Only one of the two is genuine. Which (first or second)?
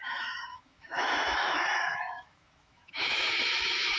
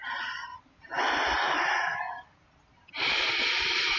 second